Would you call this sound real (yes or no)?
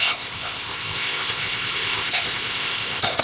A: no